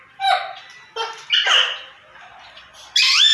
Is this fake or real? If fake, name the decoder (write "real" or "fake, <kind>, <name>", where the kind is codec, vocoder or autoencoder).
real